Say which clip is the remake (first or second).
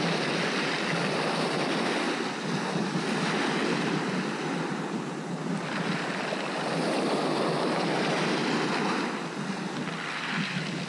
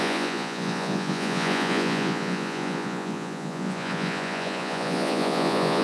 second